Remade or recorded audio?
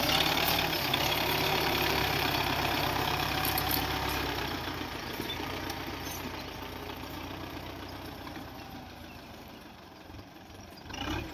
remade